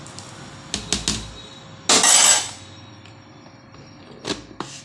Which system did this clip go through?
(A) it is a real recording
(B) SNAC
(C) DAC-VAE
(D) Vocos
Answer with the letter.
A